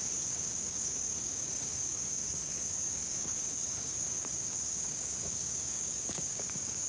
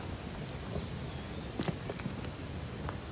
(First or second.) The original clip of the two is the second